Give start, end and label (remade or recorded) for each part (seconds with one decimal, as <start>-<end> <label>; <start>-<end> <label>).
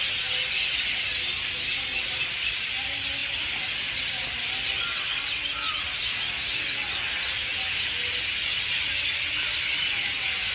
0.0-10.5 recorded